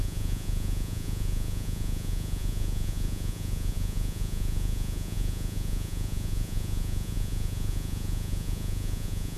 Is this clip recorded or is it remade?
remade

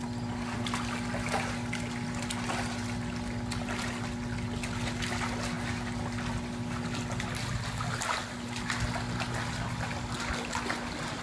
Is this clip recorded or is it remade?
recorded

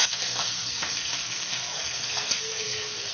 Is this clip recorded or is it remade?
remade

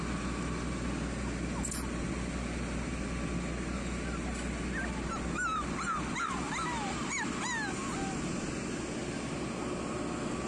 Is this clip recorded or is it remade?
recorded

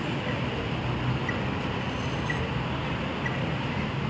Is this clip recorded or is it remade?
recorded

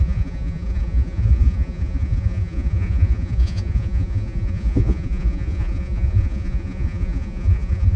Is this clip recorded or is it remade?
remade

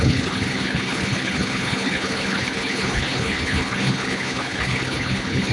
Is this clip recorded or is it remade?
remade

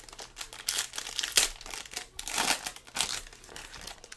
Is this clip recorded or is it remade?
recorded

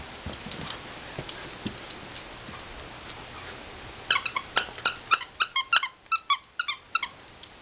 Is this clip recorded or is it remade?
recorded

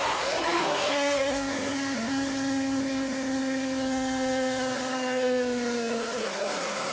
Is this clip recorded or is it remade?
remade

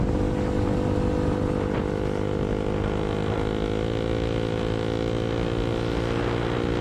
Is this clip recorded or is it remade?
recorded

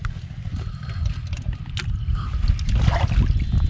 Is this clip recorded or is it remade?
recorded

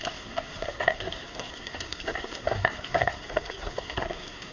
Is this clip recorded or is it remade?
remade